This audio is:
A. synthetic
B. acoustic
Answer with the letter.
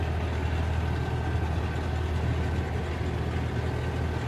B